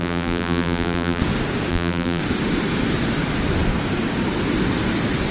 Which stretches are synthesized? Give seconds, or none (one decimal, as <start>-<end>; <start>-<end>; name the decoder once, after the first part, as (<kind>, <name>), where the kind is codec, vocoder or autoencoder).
0.0-1.2 (vocoder, BigVGAN v2); 1.7-2.2